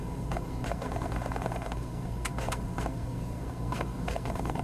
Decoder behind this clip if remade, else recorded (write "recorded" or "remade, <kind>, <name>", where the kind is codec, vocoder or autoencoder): remade, codec, SNAC